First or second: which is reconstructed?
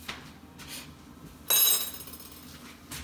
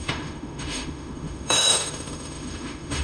second